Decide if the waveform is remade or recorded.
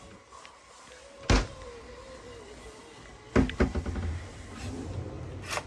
recorded